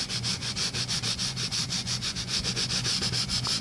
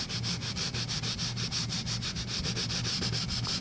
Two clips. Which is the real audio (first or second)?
second